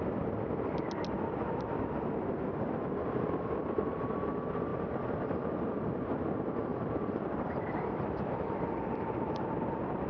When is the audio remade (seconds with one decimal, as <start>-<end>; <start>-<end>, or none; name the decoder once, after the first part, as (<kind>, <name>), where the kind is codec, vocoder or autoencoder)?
4.7-6.1 (vocoder, BigVGAN v2); 6.7-9.7